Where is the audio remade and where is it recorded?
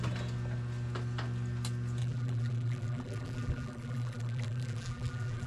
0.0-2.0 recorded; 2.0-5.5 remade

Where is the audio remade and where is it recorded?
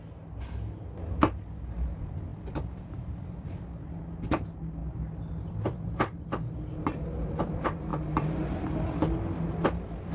0.0-2.3 recorded; 2.3-3.0 remade; 3.0-7.9 recorded; 7.9-8.8 remade; 8.8-10.1 recorded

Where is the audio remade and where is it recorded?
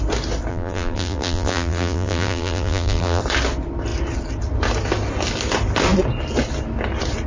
0.0-0.5 recorded; 0.5-3.2 remade; 3.2-7.3 recorded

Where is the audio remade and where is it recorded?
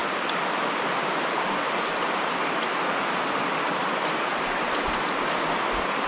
0.0-6.1 recorded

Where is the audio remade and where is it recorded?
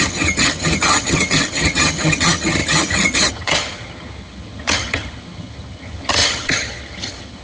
0.0-7.4 remade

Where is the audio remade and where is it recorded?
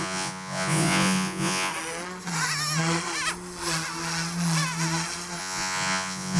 0.0-1.7 remade; 1.7-5.4 recorded; 5.4-6.4 remade